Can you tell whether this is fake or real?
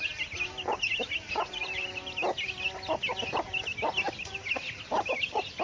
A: real